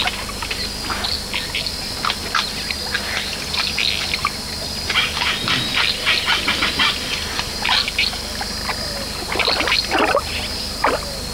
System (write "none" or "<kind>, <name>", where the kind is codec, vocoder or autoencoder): none